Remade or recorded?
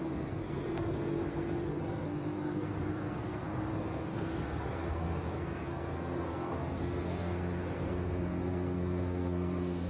remade